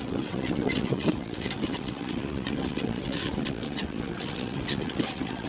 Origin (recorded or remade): remade